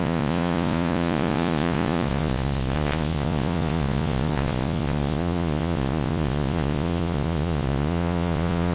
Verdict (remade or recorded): remade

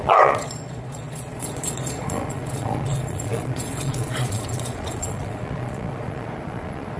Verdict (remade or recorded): remade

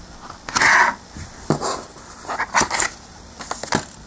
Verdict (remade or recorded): recorded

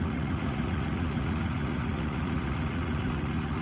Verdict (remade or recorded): remade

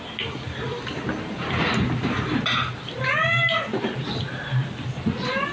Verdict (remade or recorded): recorded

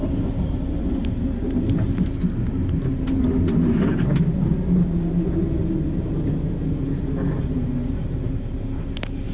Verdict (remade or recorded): recorded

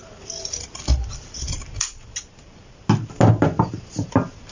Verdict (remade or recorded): recorded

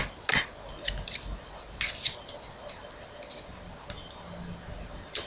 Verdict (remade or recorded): recorded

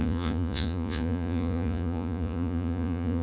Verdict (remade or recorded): remade